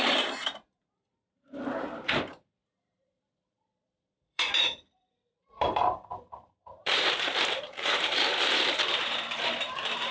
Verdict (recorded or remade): remade